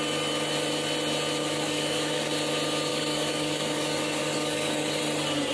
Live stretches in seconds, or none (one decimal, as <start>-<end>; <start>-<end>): 0.0-1.4; 2.3-2.9; 5.0-5.5